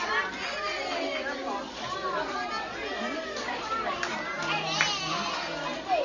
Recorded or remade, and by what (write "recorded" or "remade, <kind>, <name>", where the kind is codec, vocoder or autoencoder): recorded